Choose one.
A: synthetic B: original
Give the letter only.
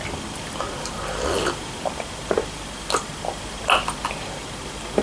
B